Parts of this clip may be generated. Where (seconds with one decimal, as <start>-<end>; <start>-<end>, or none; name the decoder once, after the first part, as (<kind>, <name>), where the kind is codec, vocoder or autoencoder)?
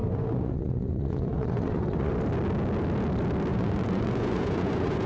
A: 0.0-2.1 (vocoder, Vocos); 3.5-5.1